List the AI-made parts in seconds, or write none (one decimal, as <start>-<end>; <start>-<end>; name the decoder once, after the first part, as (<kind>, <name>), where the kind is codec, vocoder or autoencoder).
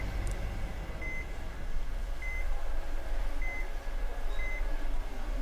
none